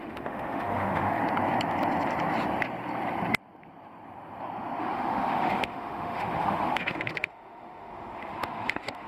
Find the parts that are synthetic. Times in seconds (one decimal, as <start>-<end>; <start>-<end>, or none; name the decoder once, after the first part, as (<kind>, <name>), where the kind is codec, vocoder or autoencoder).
0.0-1.2 (autoencoder, DAC-VAE); 4.8-9.1